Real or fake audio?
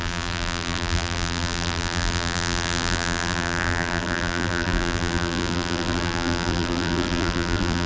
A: fake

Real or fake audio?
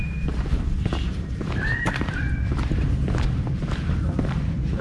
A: fake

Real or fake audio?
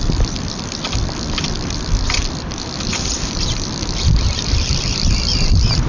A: real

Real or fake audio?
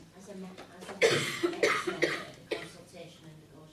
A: fake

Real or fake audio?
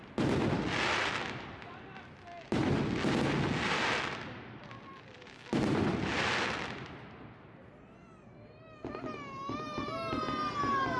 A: real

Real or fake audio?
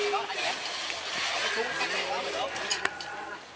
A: real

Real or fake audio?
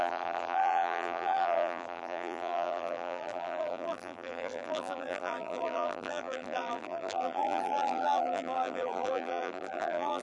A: fake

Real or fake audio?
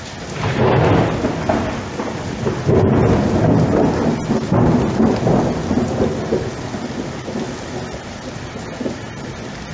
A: real